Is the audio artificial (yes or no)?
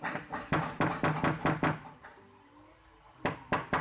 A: no